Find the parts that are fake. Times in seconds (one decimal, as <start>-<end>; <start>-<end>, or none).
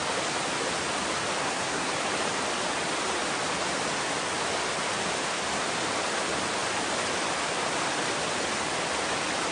1.4-1.9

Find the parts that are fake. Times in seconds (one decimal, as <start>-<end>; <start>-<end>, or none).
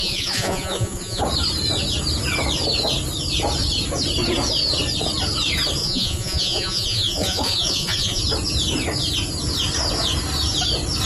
0.0-1.2; 5.8-8.2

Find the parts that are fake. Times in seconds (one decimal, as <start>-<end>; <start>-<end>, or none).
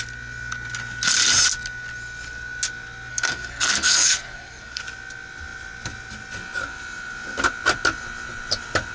3.1-4.8